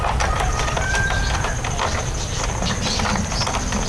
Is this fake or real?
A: real